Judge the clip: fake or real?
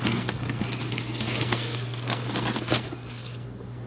fake